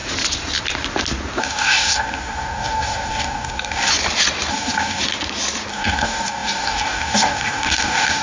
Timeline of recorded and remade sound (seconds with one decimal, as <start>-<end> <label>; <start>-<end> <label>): 0.0-1.4 recorded; 1.4-3.9 remade; 3.9-4.5 recorded; 4.5-5.0 remade; 5.0-5.7 recorded; 5.7-8.2 remade